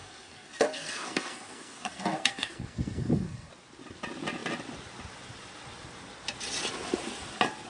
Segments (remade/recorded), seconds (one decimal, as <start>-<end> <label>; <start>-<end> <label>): 0.0-3.5 remade; 3.5-7.7 recorded